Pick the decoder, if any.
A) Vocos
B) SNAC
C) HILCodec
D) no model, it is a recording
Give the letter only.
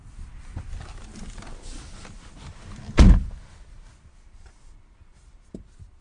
D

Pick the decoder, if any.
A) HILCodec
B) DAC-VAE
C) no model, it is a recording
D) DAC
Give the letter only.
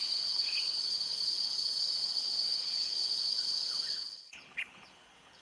A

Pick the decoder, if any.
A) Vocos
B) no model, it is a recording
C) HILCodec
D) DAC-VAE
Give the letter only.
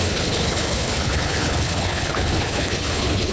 C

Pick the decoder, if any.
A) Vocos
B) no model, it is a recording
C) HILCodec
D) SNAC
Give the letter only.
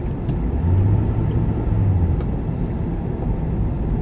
B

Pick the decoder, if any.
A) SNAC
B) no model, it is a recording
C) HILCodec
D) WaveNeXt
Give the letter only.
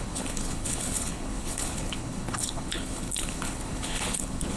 C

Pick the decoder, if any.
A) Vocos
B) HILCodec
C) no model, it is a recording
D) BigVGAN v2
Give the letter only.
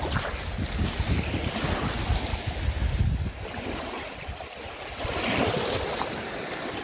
C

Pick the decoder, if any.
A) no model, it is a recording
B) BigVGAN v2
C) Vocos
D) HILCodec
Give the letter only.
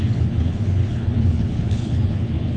D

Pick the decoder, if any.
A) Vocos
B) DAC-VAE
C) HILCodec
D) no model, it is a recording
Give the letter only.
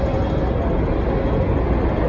D